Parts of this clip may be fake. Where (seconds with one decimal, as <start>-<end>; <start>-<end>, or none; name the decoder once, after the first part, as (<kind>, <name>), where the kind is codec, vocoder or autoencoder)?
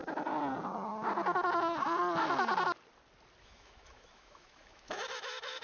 3.4-5.6 (autoencoder, DAC-VAE)